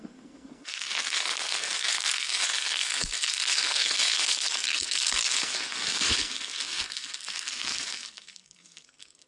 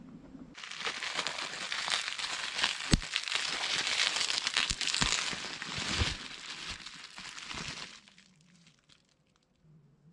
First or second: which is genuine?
second